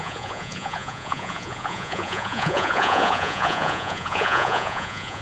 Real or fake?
fake